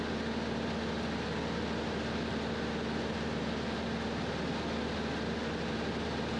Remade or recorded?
recorded